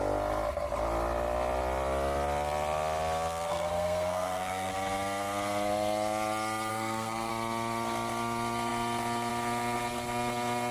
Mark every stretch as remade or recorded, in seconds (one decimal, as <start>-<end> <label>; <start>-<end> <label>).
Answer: 0.0-3.5 recorded; 3.5-4.7 remade; 4.7-6.7 recorded; 6.7-7.3 remade; 7.3-10.7 recorded